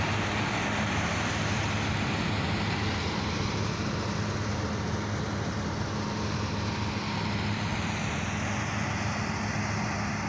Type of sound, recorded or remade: recorded